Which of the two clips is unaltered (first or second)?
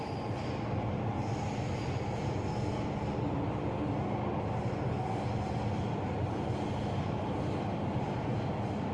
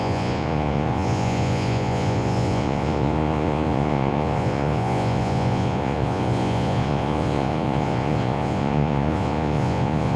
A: first